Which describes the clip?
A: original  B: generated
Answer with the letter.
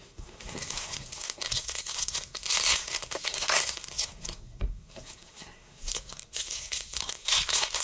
B